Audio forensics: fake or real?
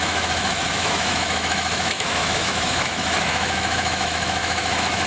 fake